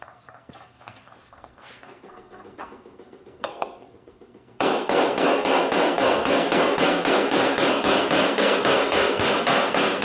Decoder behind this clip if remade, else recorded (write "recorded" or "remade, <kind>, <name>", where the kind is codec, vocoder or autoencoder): remade, codec, SNAC